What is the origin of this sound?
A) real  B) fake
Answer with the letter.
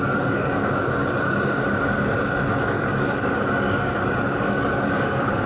B